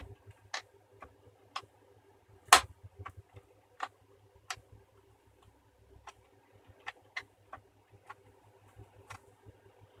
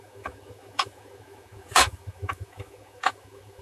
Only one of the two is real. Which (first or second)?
first